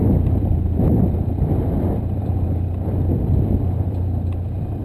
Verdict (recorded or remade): remade